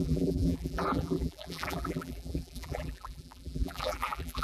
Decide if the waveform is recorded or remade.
remade